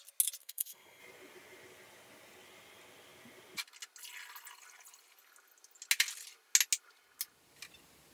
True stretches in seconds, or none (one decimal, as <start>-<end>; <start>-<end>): 0.0-0.4; 1.0-8.1